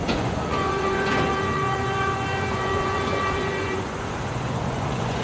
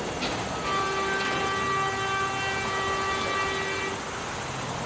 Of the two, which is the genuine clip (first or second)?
second